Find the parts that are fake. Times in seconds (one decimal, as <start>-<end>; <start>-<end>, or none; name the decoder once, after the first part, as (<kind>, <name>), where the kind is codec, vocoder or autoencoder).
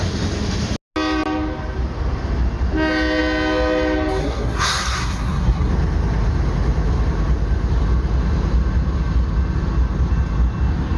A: 4.2-5.7 (codec, SNAC)